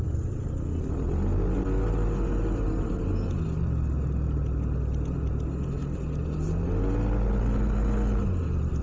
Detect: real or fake real